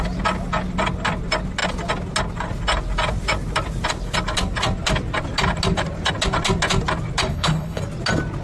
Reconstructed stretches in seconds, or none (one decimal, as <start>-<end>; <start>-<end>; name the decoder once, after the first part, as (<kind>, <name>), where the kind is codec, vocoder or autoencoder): 7.3-7.8 (codec, HILCodec)